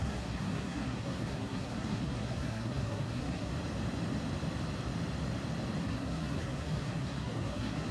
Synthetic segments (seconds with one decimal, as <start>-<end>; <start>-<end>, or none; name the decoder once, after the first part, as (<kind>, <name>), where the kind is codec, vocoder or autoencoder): 0.0-3.5 (codec, SNAC); 5.8-7.9